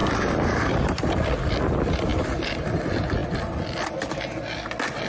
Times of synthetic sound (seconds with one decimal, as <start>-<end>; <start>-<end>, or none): 0.0-1.6; 2.1-2.8

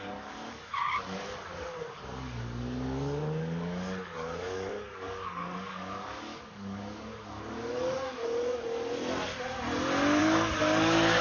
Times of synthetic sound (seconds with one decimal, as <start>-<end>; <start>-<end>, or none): 0.0-8.2; 10.2-11.2

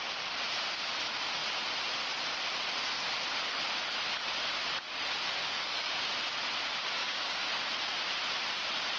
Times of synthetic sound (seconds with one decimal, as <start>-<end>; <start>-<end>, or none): 5.4-6.0; 7.0-7.5